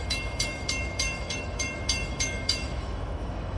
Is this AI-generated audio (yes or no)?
yes